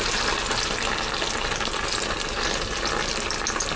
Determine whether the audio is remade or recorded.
recorded